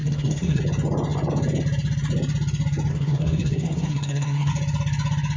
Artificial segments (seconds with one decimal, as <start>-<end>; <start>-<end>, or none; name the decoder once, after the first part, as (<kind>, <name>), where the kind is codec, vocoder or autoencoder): 0.0-0.6 (codec, SNAC); 2.9-4.5